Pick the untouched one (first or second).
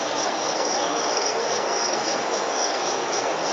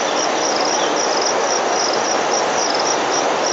second